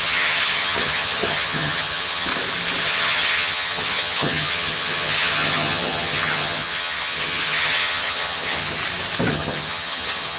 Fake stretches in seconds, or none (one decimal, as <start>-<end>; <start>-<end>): 0.0-2.3; 2.8-8.8; 9.3-10.4

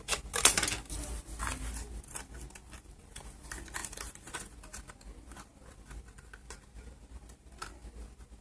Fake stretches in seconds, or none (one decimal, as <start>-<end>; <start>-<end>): none

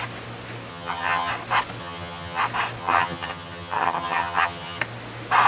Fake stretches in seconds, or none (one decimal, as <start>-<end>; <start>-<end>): 0.7-1.3; 1.8-2.4; 2.8-4.8

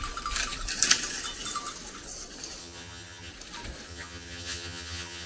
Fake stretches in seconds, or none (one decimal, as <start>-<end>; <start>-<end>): 2.6-3.3; 3.9-5.3

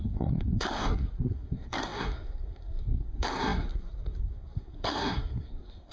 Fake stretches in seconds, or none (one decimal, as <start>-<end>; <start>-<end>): 0.0-5.9

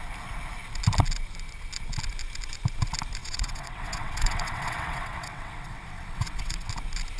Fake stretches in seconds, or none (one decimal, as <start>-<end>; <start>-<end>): 3.2-6.7

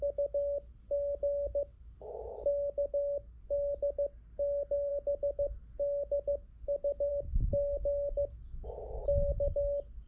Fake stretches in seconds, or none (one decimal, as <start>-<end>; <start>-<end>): none

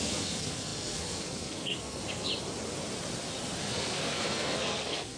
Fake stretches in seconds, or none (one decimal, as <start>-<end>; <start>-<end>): 0.0-2.3; 3.6-5.2